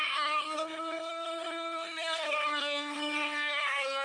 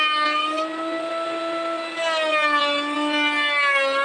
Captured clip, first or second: second